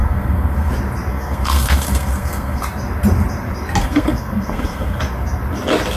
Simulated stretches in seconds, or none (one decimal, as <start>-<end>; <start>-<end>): 0.0-0.7; 1.1-2.6; 3.8-5.0